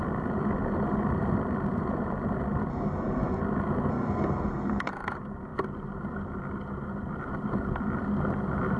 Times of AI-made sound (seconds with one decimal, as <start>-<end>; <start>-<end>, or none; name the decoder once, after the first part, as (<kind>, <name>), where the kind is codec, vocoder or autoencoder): 2.7-3.4 (codec, SNAC); 3.9-4.9